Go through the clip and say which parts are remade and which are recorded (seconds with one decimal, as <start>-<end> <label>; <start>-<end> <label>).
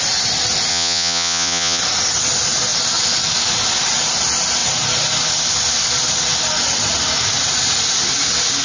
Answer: 0.0-0.7 recorded; 0.7-1.8 remade; 1.8-8.6 recorded